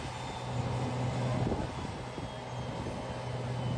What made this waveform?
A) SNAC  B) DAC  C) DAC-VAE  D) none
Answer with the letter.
D